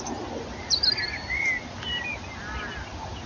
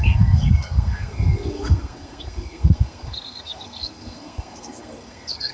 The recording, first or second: first